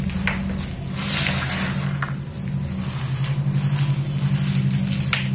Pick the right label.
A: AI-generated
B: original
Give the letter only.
B